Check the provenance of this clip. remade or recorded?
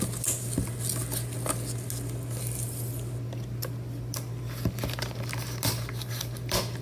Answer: recorded